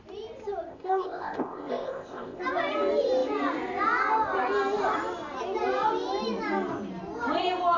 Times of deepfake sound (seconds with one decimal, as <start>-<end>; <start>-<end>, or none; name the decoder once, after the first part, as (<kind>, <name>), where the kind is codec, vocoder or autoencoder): 0.7-2.4 (codec, ZipCodec)